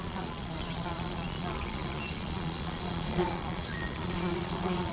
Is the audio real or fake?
fake